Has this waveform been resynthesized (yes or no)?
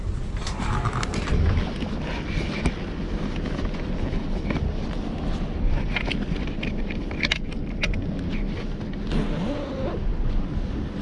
no